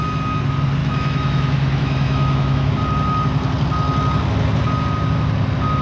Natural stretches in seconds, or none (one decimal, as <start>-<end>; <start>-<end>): 0.0-0.8; 2.7-5.8